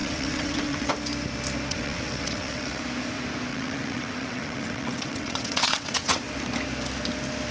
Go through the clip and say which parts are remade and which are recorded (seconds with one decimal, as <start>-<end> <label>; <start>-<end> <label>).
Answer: 0.0-0.9 remade; 0.9-1.7 recorded; 1.7-2.8 remade; 2.8-3.5 recorded; 3.5-6.2 remade; 6.2-7.5 recorded